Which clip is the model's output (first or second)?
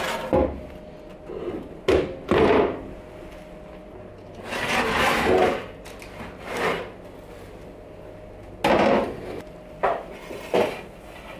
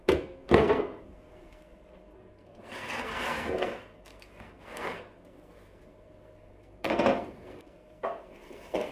second